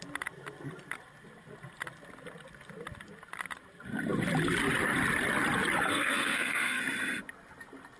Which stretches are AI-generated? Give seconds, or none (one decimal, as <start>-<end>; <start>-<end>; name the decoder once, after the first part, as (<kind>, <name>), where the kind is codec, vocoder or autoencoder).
5.9-6.8 (codec, SNAC)

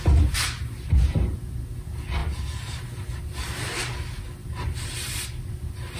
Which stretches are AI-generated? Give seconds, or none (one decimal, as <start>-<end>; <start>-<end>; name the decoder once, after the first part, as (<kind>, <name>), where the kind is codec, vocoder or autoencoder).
none

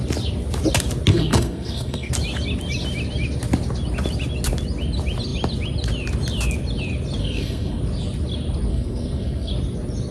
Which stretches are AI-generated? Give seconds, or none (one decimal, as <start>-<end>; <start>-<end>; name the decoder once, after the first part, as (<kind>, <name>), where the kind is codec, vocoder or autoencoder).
1.1-2.1 (codec, SNAC); 7.2-7.8; 8.7-9.5

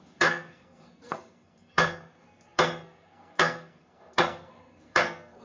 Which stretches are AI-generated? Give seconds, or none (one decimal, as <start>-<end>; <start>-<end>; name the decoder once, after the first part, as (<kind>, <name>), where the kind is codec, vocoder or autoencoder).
0.0-5.4 (codec, SNAC)

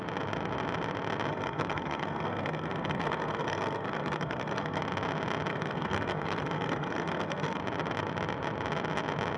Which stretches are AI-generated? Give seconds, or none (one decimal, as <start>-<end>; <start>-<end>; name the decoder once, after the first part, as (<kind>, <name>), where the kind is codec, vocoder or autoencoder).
1.3-4.8 (codec, SNAC); 5.5-7.6

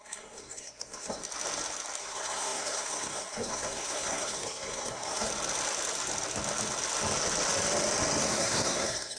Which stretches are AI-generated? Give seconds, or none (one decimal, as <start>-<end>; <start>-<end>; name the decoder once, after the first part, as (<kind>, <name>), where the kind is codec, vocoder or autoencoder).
0.0-1.2 (codec, SNAC); 2.0-5.3; 8.2-9.2

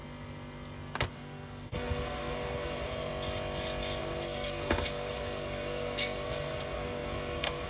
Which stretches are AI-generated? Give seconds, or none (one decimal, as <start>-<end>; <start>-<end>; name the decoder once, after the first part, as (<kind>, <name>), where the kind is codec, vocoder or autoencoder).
1.1-3.1 (codec, SNAC); 4.0-7.7